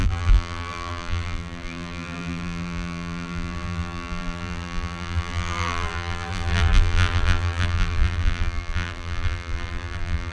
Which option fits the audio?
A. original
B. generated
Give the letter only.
B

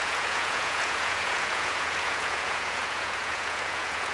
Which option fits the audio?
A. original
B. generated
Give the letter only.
B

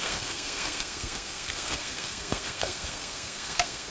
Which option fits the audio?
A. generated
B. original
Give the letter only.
A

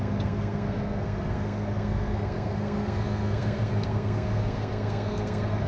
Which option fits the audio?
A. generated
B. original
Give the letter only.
A